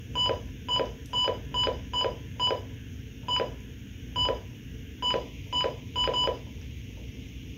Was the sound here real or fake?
real